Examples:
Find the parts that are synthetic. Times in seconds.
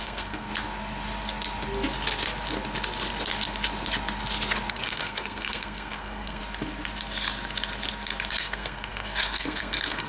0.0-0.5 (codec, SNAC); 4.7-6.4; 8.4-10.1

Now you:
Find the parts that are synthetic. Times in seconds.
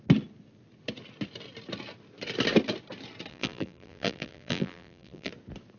3.3-5.3 (vocoder, BigVGAN v2)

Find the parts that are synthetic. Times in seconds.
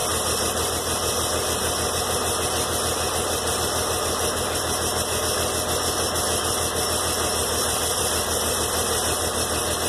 7.4-9.9 (vocoder, BigVGAN v2)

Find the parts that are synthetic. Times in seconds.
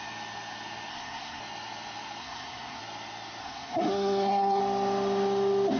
0.9-1.4 (codec, SNAC); 2.2-2.8; 3.4-4.6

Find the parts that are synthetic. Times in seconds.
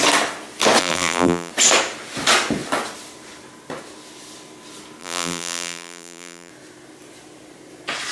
0.8-1.5 (vocoder, BigVGAN v2); 5.0-6.5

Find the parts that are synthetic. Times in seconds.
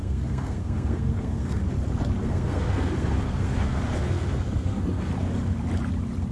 0.0-1.6 (codec, SNAC); 2.2-5.1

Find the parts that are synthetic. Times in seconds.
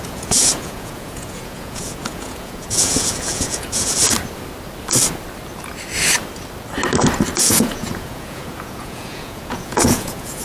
0.0-4.0 (vocoder, Vocos); 7.4-10.4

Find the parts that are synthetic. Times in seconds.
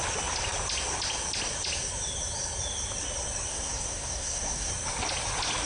3.5-4.7 (codec, SNAC)